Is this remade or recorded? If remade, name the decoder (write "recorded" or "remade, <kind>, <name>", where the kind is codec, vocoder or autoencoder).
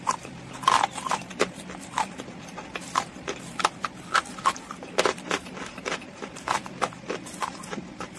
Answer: remade, vocoder, BigVGAN v2